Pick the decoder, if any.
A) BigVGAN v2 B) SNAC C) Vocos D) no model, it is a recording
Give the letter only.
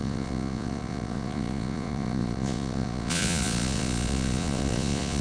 C